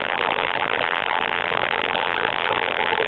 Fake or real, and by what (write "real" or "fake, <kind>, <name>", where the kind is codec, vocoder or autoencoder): fake, vocoder, BigVGAN v2